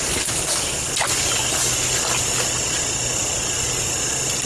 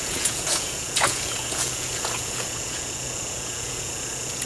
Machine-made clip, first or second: second